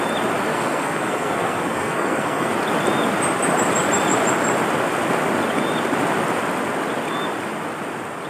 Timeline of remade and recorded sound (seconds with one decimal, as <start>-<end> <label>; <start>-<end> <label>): 0.0-0.5 recorded; 0.5-2.5 remade; 2.5-8.3 recorded